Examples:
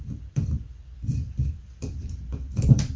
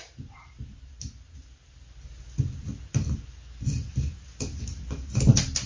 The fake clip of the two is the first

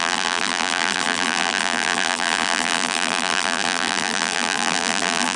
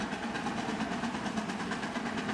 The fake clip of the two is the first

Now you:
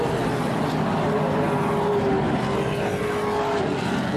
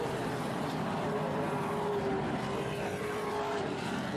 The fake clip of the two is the second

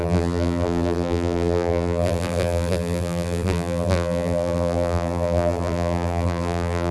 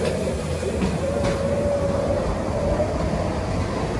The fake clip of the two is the first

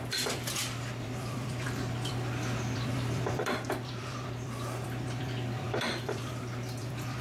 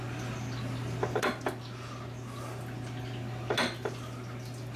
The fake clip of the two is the first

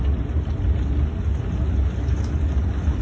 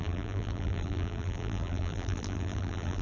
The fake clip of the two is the second